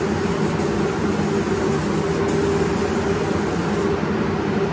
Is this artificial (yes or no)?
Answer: no